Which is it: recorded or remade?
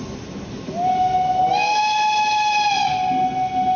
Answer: recorded